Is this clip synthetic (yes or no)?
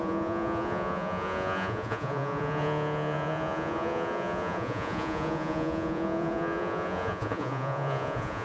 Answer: yes